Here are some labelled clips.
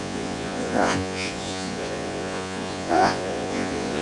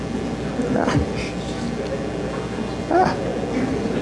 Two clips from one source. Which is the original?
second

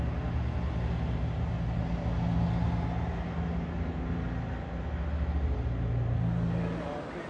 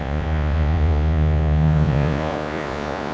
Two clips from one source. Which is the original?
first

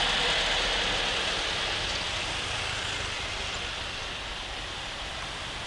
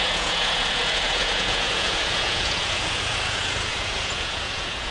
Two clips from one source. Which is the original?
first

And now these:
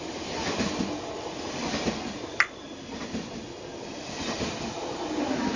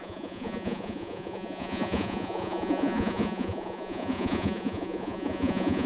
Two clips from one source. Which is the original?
first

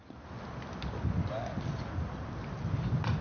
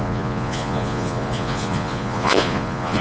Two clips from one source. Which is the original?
first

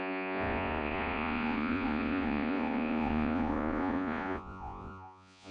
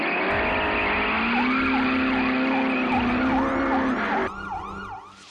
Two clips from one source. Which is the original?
second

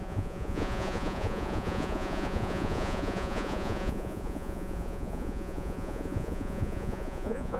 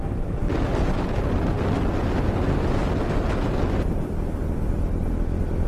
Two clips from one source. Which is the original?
second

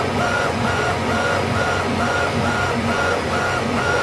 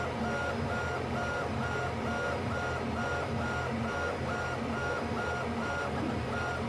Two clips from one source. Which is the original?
second